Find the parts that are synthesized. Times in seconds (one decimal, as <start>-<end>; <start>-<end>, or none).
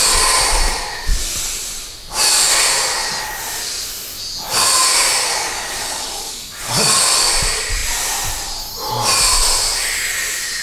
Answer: 5.3-7.0